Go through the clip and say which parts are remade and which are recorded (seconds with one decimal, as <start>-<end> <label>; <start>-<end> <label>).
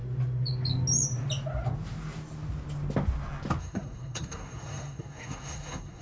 0.0-3.6 recorded; 3.6-6.0 remade